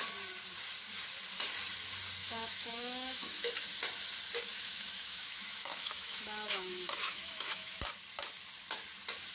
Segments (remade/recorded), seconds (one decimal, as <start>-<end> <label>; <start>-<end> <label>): 0.0-2.2 recorded; 2.2-3.5 remade; 3.5-4.5 recorded; 4.5-7.8 remade; 7.8-9.3 recorded